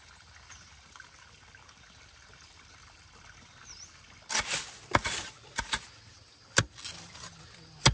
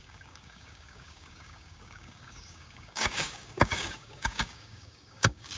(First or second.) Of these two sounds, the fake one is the second